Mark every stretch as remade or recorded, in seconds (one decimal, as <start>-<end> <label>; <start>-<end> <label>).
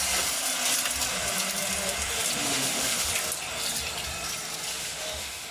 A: 0.0-2.4 recorded; 2.4-3.1 remade; 3.1-4.7 recorded; 4.7-5.5 remade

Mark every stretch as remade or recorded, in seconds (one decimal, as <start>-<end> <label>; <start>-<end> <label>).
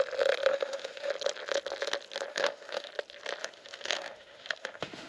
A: 0.0-0.5 recorded; 0.5-1.1 remade; 1.1-2.3 recorded; 2.3-2.9 remade; 2.9-3.4 recorded; 3.4-5.1 remade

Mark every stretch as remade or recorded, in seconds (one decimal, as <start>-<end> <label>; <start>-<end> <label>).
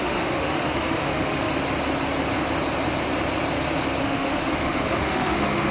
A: 0.0-1.5 remade; 1.5-4.0 recorded; 4.0-5.7 remade